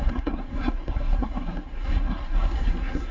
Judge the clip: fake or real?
fake